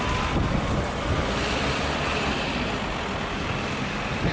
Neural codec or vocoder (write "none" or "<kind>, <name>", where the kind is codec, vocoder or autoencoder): none